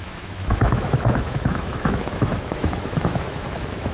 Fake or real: fake